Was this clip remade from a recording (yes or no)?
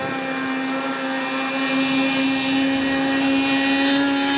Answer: no